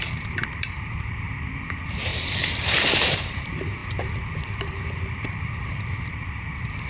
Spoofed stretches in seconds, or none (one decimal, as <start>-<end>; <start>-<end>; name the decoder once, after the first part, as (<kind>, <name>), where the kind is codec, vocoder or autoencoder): 0.0-6.9 (vocoder, BigVGAN v2)